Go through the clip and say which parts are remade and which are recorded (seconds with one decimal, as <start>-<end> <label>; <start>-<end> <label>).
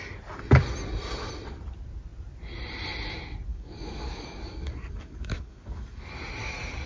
0.0-3.5 recorded; 3.5-6.1 remade; 6.1-6.9 recorded